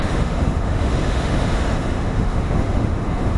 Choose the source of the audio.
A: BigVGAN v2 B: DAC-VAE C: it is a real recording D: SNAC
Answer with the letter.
B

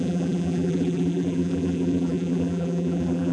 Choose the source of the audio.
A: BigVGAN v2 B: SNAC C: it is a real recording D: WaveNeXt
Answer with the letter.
A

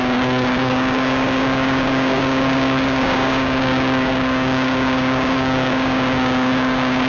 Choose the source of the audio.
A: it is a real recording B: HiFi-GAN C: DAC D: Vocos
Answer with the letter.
C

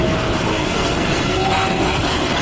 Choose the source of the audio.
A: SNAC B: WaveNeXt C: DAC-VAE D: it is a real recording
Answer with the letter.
A